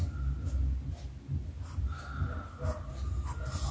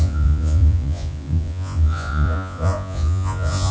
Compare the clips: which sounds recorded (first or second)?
first